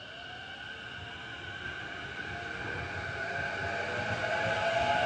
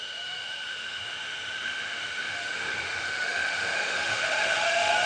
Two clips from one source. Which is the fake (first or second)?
second